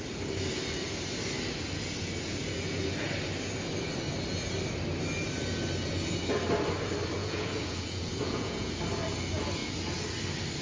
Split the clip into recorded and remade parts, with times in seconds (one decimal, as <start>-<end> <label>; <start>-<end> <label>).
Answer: 0.0-7.2 recorded; 7.2-8.7 remade; 8.7-10.6 recorded